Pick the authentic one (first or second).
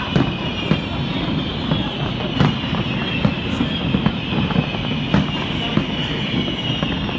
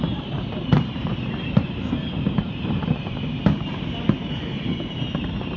first